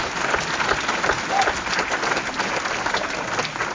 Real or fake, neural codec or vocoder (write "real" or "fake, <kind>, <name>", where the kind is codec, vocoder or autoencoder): real